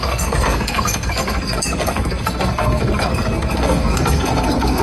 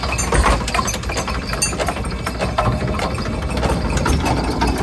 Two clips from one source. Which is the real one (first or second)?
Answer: second